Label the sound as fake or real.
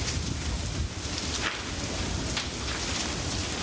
real